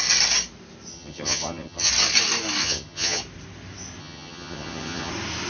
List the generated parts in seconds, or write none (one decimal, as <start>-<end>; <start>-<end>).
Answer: 0.9-1.9; 2.6-3.2; 4.0-5.1

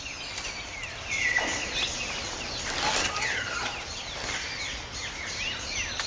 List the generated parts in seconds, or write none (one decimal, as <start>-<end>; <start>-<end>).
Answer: 3.0-3.7

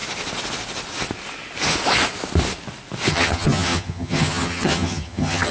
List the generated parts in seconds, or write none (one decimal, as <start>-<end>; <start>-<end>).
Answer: 3.1-5.5

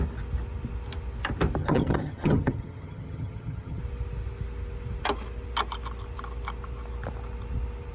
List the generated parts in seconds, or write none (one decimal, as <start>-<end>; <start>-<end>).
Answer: 1.6-3.8

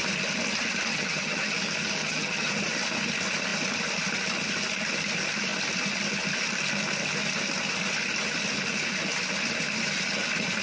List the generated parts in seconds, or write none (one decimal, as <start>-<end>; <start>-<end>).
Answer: 0.9-1.5; 2.0-2.5